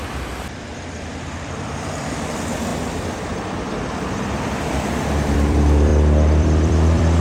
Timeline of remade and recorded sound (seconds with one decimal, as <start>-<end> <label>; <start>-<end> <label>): 0.0-2.7 remade; 2.7-3.7 recorded; 3.7-5.9 remade; 5.9-6.4 recorded; 6.4-7.2 remade

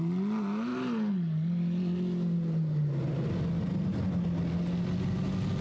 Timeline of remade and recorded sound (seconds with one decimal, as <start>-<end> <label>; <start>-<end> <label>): 0.0-5.6 recorded

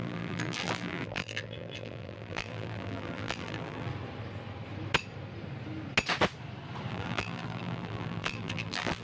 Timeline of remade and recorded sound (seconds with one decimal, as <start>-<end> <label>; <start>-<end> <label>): 0.0-3.9 remade; 3.9-6.9 recorded; 6.9-9.0 remade

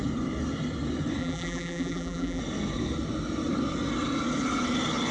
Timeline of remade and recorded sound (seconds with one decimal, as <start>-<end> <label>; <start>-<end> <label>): 0.0-1.2 recorded; 1.2-2.4 remade; 2.4-5.1 recorded

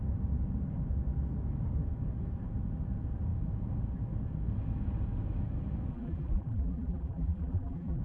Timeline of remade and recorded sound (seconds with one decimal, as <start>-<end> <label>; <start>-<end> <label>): 0.0-5.9 recorded; 5.9-8.0 remade

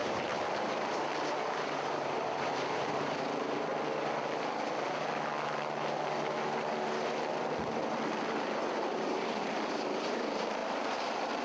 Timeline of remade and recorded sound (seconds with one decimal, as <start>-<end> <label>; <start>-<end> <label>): 0.0-3.7 remade; 3.7-8.7 recorded; 8.7-11.4 remade

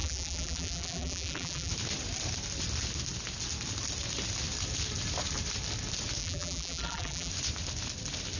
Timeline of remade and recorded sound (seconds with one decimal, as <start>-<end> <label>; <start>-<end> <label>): 0.0-1.7 remade; 1.7-6.2 recorded; 6.2-7.3 remade; 7.3-8.4 recorded